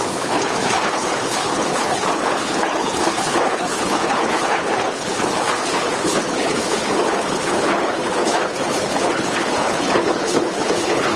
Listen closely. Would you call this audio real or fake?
fake